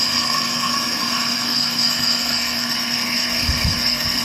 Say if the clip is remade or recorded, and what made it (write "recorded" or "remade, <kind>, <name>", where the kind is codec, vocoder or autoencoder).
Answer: remade, codec, SNAC